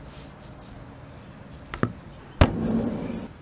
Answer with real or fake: real